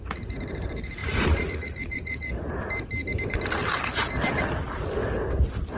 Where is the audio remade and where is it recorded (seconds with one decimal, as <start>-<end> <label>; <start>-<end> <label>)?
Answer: 0.0-1.0 recorded; 1.0-2.5 remade; 2.5-5.8 recorded